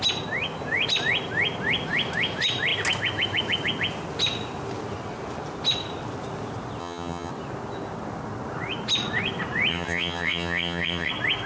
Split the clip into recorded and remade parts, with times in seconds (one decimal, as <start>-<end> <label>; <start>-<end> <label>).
0.0-6.8 recorded; 6.8-7.3 remade; 7.3-9.7 recorded; 9.7-11.1 remade; 11.1-11.5 recorded